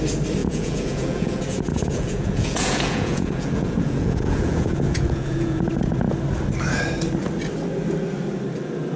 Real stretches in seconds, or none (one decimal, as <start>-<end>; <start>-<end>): 0.0-0.4; 5.7-9.0